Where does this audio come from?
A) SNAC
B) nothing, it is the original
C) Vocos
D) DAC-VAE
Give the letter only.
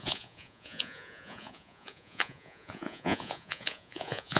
C